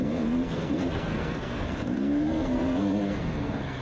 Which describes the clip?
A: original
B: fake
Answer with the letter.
B